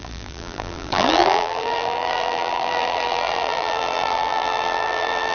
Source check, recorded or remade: remade